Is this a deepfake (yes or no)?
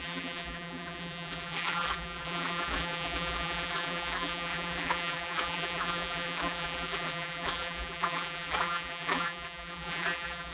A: yes